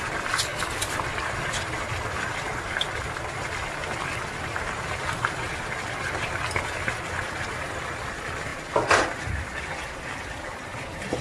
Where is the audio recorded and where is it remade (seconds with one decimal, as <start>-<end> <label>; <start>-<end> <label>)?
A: 0.0-11.2 recorded